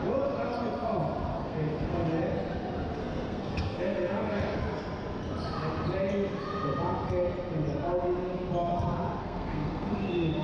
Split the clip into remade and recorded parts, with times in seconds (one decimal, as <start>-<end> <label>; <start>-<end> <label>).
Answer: 0.0-1.3 recorded; 1.3-2.2 remade; 2.2-3.0 recorded; 3.0-4.6 remade; 4.6-9.2 recorded; 9.2-10.0 remade; 10.0-10.4 recorded